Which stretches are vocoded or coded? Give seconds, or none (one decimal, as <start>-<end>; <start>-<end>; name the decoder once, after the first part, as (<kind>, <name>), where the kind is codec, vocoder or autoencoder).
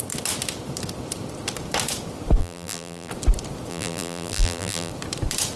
2.4-3.1 (vocoder, BigVGAN v2); 3.7-4.9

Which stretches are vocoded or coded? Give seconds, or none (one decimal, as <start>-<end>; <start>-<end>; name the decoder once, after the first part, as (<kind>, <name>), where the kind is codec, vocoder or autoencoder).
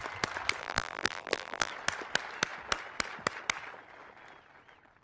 0.6-1.7 (vocoder, BigVGAN v2)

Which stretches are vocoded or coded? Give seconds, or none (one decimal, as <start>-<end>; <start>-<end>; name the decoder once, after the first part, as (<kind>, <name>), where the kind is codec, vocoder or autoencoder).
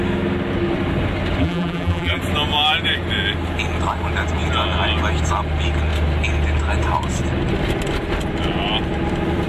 1.4-2.2 (vocoder, BigVGAN v2)